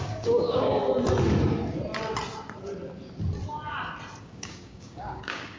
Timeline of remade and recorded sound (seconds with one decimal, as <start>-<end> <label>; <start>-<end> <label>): 0.0-0.8 remade; 0.8-4.2 recorded; 4.2-5.6 remade